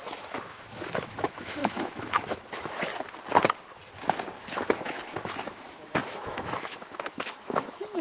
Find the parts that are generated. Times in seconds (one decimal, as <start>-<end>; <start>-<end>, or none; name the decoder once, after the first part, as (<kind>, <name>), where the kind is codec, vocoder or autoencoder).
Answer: 0.0-2.9 (autoencoder, DAC-VAE); 4.4-8.0